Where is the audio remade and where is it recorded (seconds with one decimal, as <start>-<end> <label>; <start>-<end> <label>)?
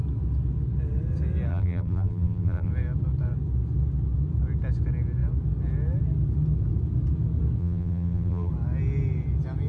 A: 0.0-1.5 recorded; 1.5-2.7 remade; 2.7-7.6 recorded; 7.6-8.5 remade; 8.5-9.7 recorded